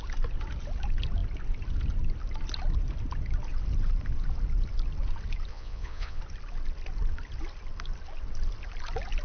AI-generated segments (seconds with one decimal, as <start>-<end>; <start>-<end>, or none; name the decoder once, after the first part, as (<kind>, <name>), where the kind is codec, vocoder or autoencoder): 5.5-6.2 (vocoder, Vocos)